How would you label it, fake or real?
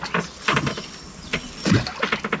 real